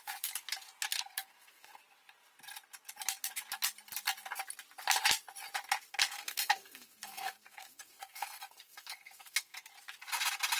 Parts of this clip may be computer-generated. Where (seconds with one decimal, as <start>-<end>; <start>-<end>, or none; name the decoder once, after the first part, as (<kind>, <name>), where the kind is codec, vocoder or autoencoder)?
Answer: 0.9-1.8 (codec, SNAC); 5.9-9.6